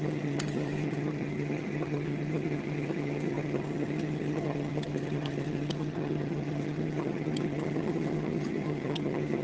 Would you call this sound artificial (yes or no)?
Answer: yes